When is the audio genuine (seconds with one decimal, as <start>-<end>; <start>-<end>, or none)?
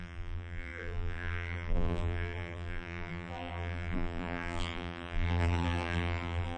none